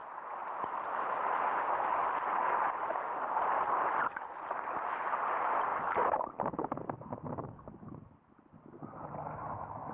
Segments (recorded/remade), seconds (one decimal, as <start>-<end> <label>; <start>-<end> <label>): 0.0-0.8 remade; 0.8-5.7 recorded; 5.7-9.1 remade; 9.1-9.9 recorded